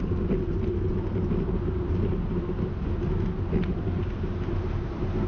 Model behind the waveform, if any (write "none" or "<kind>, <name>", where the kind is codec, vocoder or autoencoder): none